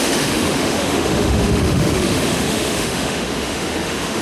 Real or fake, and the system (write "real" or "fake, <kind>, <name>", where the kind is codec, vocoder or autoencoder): fake, autoencoder, DAC-VAE